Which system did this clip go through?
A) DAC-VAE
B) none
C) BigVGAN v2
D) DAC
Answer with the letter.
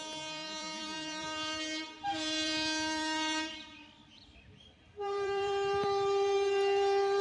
C